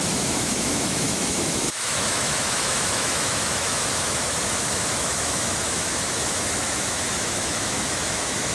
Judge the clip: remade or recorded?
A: remade